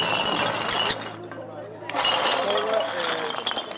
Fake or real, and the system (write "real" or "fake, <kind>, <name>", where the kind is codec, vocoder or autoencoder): real